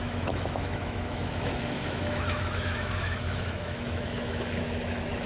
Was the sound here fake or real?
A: fake